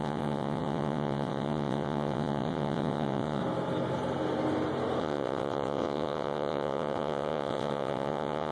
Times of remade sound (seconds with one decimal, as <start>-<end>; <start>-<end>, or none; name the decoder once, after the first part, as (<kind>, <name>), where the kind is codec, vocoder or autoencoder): 0.0-3.4 (vocoder, WaveNeXt); 5.0-8.5